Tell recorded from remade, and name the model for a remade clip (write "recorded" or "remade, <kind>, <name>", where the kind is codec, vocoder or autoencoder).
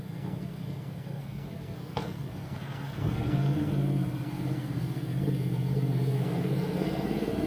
remade, codec, SNAC